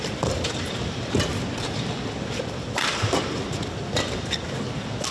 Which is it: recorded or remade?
remade